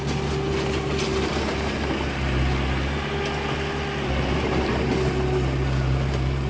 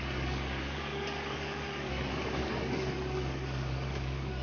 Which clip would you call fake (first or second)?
second